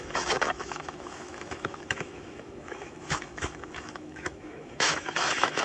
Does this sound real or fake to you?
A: fake